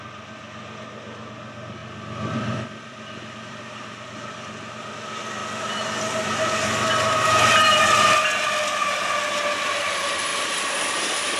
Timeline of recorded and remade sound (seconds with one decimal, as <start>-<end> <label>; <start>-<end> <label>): 0.0-1.8 recorded; 1.8-4.9 remade; 4.9-10.3 recorded; 10.3-11.4 remade